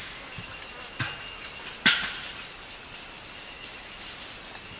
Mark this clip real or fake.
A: real